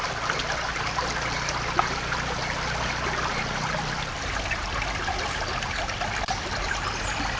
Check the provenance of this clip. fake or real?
real